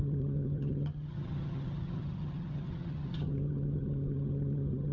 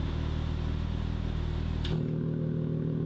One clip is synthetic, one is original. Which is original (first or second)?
second